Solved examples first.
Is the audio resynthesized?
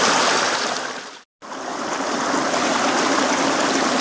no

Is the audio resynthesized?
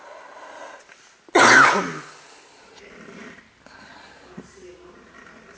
no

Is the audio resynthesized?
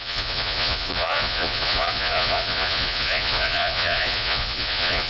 yes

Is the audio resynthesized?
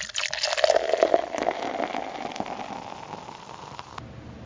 no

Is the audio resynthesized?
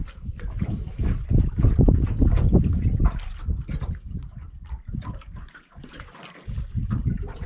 no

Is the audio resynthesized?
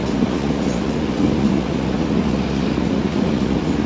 yes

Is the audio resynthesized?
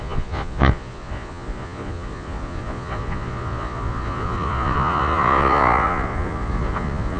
yes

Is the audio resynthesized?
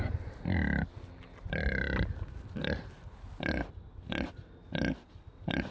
no